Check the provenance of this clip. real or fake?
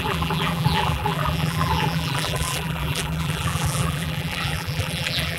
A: fake